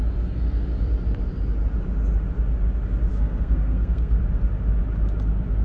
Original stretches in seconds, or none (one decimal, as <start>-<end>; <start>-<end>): 0.0-3.1; 4.2-5.6